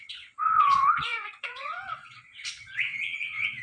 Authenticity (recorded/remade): remade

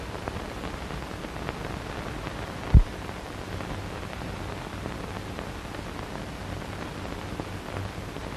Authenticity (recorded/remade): recorded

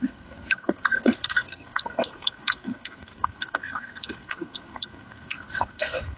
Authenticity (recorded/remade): remade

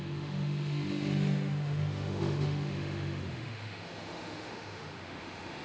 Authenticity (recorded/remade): remade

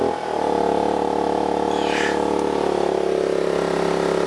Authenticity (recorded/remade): recorded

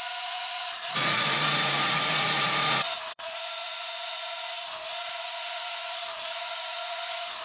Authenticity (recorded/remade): remade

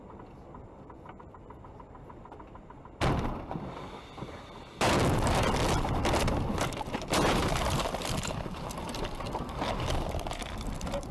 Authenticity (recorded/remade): remade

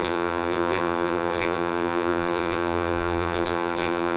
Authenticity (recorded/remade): remade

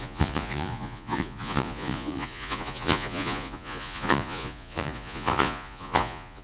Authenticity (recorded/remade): remade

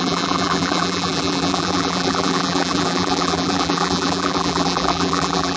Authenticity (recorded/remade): remade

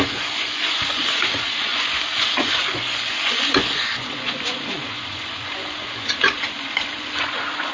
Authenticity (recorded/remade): remade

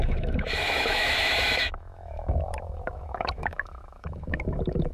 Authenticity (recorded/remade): remade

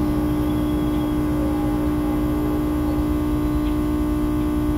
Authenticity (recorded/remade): recorded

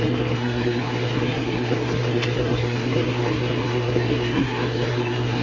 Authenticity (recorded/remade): remade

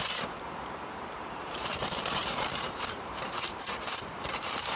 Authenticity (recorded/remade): remade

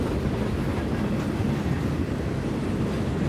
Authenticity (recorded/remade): recorded